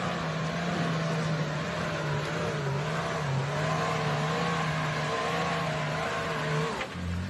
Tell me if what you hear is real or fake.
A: real